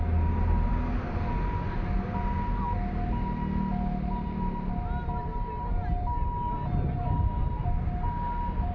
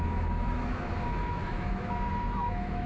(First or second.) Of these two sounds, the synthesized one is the second